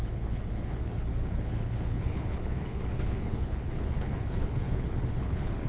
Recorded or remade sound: remade